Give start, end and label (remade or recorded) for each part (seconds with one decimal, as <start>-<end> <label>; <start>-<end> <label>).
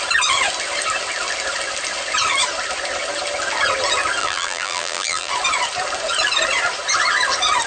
0.0-4.2 recorded; 4.2-5.3 remade; 5.3-7.7 recorded